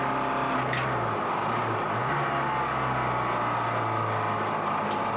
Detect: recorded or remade recorded